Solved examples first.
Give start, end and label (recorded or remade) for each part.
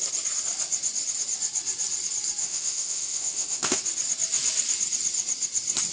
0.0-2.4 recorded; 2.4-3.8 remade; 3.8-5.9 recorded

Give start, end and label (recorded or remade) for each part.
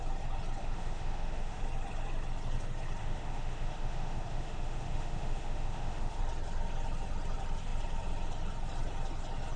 0.0-0.6 recorded; 0.6-1.6 remade; 1.6-3.0 recorded; 3.0-6.2 remade; 6.2-9.6 recorded